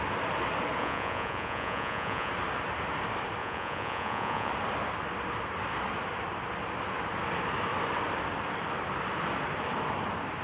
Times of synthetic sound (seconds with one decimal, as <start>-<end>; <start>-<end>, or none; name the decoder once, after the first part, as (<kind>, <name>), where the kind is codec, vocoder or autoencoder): 0.8-2.3 (vocoder, Vocos); 3.4-4.5